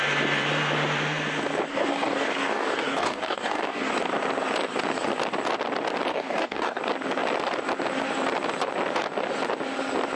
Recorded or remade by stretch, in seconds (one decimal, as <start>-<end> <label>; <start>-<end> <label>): 0.0-1.7 recorded; 1.7-3.9 remade; 3.9-6.1 recorded; 6.1-6.8 remade; 6.8-10.2 recorded